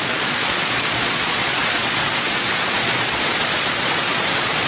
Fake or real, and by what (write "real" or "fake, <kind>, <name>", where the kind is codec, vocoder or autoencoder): fake, vocoder, Vocos